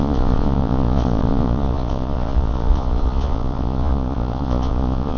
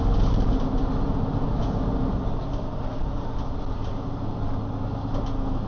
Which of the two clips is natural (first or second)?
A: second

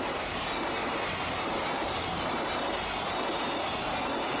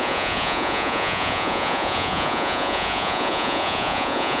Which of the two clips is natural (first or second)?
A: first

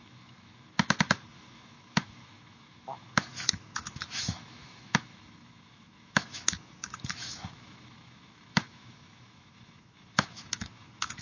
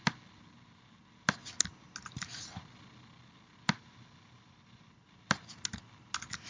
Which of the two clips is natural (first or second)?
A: second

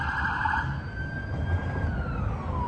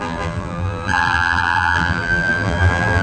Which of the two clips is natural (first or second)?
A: first